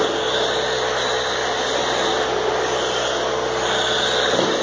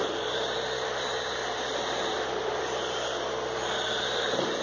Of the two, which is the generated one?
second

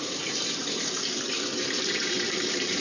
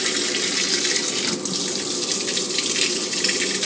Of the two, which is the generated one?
first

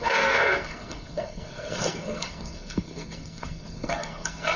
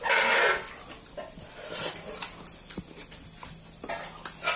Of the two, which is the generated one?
first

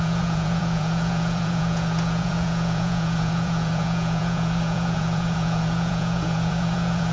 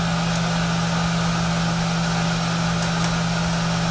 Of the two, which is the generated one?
first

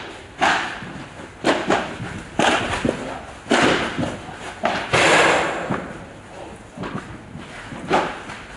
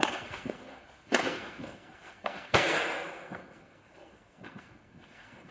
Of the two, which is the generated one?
second